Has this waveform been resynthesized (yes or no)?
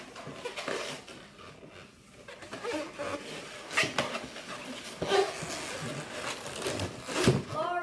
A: no